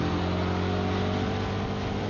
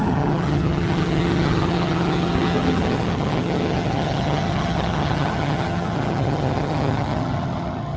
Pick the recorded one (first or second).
first